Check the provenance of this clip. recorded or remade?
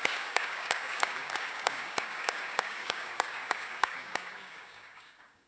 remade